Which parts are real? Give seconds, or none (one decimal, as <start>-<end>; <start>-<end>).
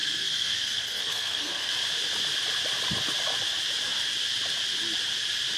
1.7-5.6